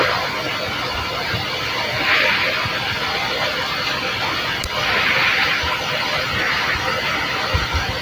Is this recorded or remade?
recorded